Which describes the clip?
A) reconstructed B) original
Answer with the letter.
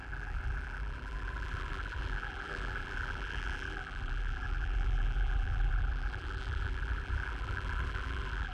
A